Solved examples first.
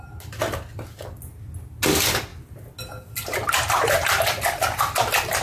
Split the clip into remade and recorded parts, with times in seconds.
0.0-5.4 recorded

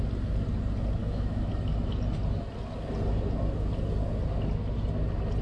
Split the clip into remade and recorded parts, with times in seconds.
0.0-1.0 recorded; 1.0-1.5 remade; 1.5-5.4 recorded

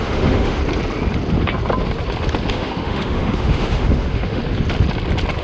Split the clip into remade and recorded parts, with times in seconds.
0.0-0.6 remade; 0.6-2.5 recorded; 2.5-4.4 remade; 4.4-5.4 recorded

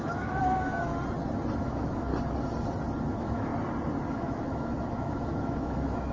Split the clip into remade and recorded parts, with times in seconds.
0.0-0.9 remade; 0.9-1.6 recorded; 1.6-2.1 remade; 2.1-3.1 recorded; 3.1-3.5 remade; 3.5-4.1 recorded; 4.1-6.1 remade

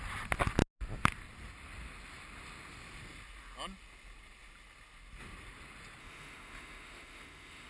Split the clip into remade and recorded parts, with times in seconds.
0.0-6.0 recorded; 6.0-7.7 remade